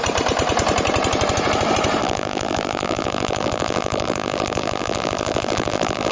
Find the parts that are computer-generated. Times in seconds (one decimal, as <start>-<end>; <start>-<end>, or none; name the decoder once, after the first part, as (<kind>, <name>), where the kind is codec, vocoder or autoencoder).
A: 2.0-6.1 (vocoder, BigVGAN v2)